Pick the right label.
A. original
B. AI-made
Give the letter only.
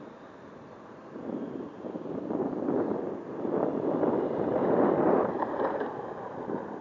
A